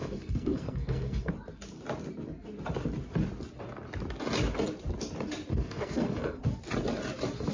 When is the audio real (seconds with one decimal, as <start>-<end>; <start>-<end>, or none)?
1.3-5.5; 6.4-7.5